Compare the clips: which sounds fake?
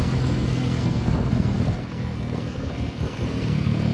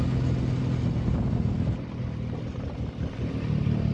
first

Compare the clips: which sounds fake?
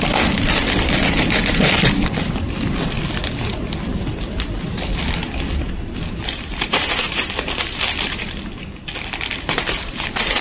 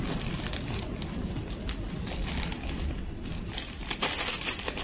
first